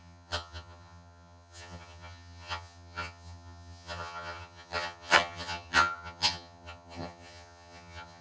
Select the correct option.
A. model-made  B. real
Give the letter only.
A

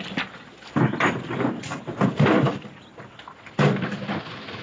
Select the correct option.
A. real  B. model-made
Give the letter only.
A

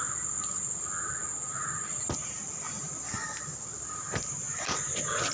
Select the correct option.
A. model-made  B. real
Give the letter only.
B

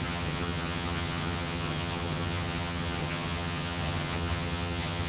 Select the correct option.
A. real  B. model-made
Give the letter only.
B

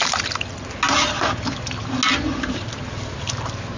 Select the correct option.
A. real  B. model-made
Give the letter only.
A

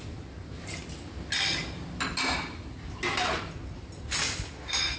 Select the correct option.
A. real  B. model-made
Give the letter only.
A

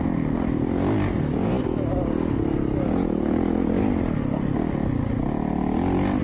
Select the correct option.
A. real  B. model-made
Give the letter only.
A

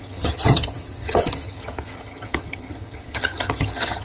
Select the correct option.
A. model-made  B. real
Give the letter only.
A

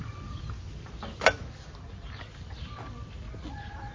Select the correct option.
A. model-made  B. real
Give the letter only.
B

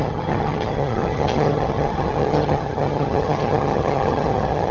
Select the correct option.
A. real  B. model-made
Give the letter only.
B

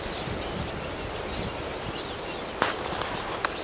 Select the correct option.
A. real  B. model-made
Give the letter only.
A